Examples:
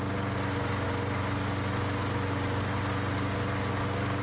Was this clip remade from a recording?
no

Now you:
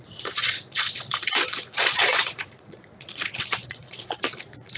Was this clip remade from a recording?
yes